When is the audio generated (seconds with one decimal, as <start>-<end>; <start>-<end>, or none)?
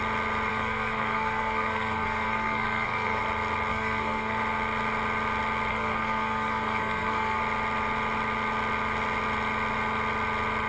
0.5-3.2; 3.7-4.4; 5.7-7.4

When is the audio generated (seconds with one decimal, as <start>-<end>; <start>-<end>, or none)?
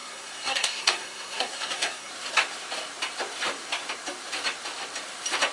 0.0-2.1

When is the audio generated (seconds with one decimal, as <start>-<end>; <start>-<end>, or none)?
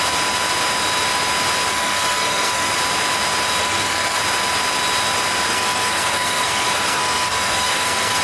1.7-2.7; 3.6-4.2; 5.5-8.2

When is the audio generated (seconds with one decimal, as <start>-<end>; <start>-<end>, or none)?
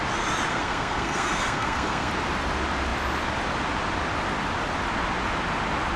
0.5-2.1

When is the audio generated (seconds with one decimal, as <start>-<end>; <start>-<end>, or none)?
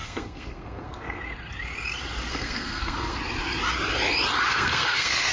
0.0-1.2; 2.3-3.2; 4.5-5.3